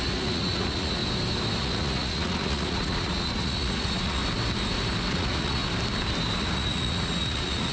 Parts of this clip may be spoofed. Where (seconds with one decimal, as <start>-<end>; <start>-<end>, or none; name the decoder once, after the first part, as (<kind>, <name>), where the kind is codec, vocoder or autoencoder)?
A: 0.0-1.0 (vocoder, Vocos); 1.6-4.2; 5.1-5.6; 6.4-7.7